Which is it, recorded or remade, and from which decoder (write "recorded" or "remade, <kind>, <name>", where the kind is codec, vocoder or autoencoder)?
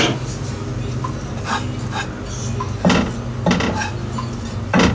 recorded